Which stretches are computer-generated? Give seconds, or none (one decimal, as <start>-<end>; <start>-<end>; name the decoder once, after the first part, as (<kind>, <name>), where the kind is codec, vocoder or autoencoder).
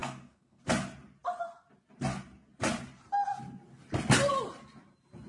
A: 0.0-0.6 (codec, SNAC)